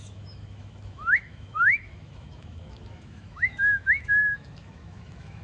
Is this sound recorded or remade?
remade